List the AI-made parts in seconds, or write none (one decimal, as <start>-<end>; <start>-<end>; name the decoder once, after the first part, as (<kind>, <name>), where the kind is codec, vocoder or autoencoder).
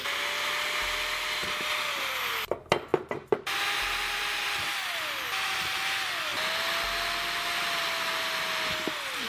none